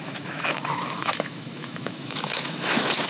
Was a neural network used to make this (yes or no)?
yes